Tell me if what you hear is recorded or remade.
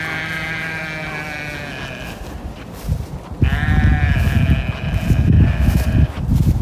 recorded